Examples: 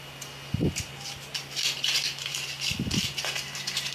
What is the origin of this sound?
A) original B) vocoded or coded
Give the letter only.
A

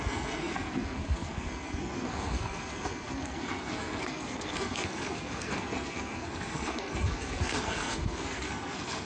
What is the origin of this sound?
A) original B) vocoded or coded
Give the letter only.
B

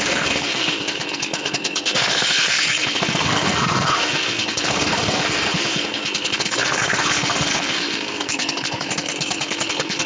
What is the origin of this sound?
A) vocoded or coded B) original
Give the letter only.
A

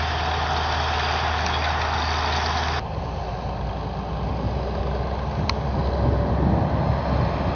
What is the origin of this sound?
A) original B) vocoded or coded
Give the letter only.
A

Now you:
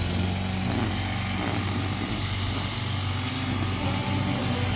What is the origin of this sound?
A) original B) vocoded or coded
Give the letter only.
A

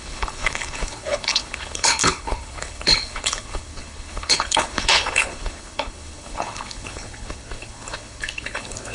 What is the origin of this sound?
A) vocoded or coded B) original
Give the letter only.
A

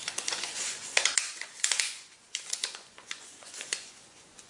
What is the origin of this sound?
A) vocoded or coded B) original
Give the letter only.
A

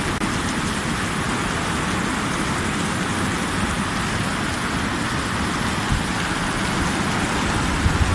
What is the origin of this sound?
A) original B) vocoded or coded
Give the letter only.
A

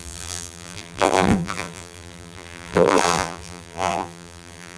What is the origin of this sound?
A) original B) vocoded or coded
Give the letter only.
B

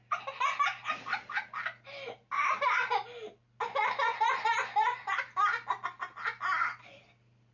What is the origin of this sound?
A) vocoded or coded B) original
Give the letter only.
B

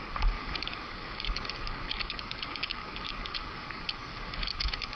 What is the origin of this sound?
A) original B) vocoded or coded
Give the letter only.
B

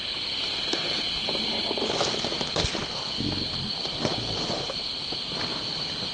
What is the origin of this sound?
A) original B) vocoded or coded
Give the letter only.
A